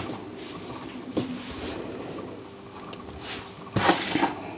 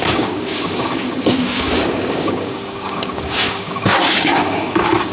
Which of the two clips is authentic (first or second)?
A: first